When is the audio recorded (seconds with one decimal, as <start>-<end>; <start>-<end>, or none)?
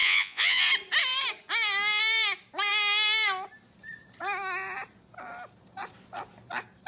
0.6-6.9